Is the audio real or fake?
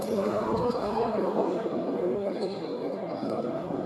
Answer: fake